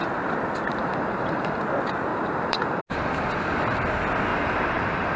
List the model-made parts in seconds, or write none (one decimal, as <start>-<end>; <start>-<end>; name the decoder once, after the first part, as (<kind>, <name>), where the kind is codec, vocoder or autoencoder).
0.8-1.6 (vocoder, BigVGAN v2); 2.1-2.8; 4.3-5.2